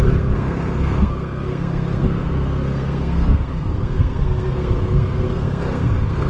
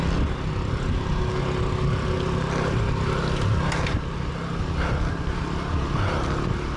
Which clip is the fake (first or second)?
first